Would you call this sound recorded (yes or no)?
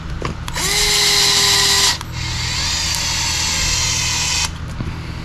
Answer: yes